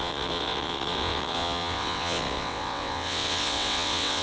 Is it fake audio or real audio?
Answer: fake